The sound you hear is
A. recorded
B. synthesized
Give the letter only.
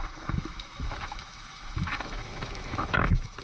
B